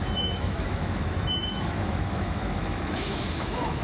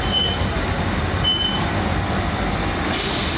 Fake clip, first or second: first